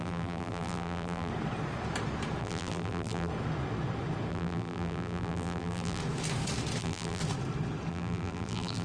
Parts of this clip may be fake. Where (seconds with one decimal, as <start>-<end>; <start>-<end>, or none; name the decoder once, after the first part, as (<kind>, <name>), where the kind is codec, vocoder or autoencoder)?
0.0-1.3 (vocoder, BigVGAN v2); 2.4-3.3; 4.3-6.0; 6.8-7.2; 7.9-8.8